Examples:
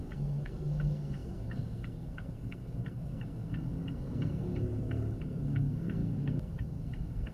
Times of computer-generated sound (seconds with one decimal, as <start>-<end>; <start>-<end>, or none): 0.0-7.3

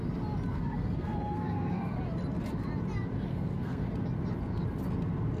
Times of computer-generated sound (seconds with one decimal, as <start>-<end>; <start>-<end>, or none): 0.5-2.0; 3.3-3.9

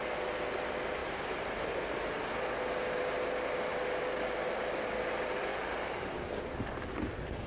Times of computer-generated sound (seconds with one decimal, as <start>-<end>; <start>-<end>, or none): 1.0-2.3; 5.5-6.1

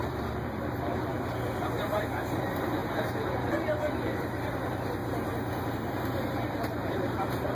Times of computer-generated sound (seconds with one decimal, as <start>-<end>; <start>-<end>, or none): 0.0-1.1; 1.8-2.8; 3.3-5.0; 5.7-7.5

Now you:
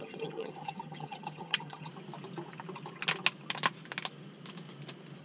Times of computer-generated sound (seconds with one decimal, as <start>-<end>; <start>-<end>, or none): 0.0-1.9

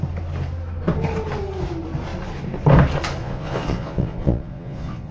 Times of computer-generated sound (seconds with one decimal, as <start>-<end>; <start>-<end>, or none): 3.2-5.1

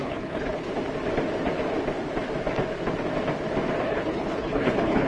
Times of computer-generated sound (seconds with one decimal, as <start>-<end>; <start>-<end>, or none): 0.0-0.7; 3.8-5.1